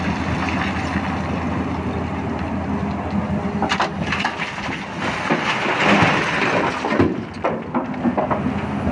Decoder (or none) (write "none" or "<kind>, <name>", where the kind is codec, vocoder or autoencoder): none